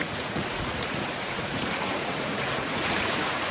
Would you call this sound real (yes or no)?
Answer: no